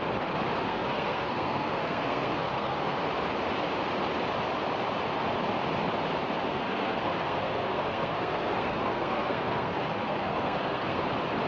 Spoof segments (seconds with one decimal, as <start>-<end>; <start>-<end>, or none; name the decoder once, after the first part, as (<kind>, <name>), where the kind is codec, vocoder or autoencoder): 0.7-3.1 (codec, SNAC); 6.5-11.0